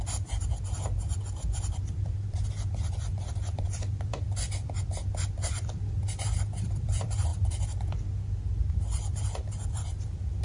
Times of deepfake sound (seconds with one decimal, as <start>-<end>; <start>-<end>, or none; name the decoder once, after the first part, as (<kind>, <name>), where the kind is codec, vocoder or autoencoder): 0.0-7.3 (vocoder, BigVGAN v2); 8.6-10.4